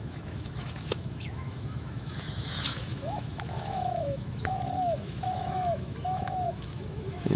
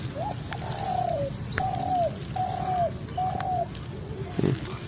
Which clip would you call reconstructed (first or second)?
first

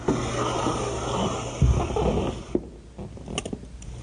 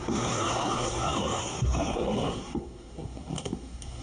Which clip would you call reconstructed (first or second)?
second